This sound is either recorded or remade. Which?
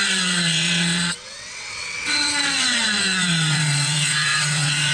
remade